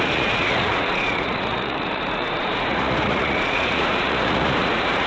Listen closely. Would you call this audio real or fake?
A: fake